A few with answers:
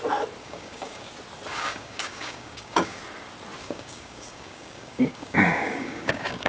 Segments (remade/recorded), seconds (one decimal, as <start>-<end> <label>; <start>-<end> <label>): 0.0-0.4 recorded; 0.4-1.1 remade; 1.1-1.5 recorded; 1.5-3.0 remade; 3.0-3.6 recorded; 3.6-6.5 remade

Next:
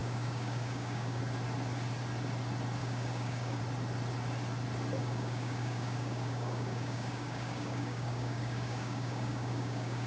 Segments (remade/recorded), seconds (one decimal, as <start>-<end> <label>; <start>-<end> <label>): 0.0-1.2 remade; 1.2-2.8 recorded; 2.8-3.6 remade; 3.6-5.0 recorded; 5.0-10.1 remade

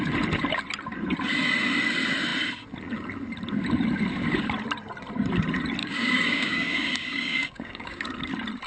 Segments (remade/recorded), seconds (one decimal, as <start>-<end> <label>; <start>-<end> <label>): 0.0-5.8 recorded; 5.8-8.0 remade; 8.0-8.7 recorded